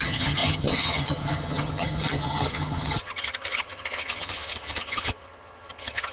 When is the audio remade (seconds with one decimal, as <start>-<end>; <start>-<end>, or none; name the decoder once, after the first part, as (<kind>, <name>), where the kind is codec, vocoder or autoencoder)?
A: 0.0-6.1 (vocoder, HiFi-GAN)